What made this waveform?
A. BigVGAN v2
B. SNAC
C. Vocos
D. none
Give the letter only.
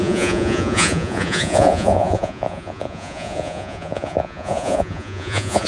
C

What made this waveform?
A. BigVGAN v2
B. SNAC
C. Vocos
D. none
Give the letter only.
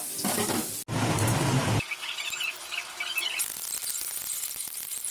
D